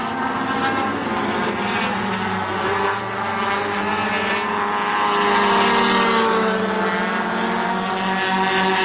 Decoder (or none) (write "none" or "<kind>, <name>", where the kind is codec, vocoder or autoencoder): none